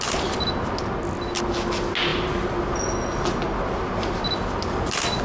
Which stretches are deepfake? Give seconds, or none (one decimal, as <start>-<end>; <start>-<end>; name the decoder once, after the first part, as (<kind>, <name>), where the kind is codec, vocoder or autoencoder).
none